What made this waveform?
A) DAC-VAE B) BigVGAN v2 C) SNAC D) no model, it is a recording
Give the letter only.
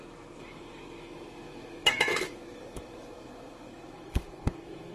A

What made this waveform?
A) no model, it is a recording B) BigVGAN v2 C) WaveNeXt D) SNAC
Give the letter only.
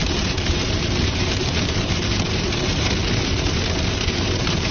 B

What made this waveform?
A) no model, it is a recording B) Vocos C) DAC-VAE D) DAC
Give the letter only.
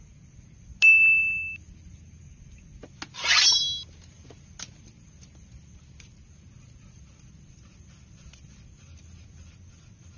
A